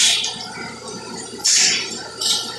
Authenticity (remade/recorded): recorded